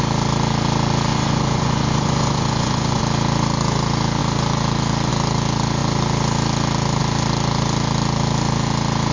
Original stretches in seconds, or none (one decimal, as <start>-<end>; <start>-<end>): 0.0-1.1; 3.0-9.1